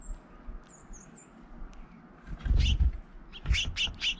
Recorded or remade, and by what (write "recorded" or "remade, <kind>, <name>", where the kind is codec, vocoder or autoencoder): recorded